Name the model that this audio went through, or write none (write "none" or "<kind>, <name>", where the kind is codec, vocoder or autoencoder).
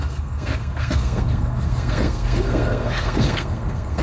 codec, SNAC